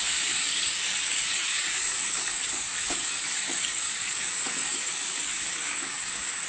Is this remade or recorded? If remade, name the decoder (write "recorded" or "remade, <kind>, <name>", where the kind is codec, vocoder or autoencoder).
remade, codec, DAC